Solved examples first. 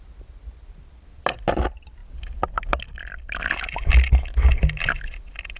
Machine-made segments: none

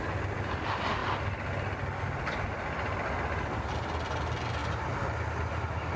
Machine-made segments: none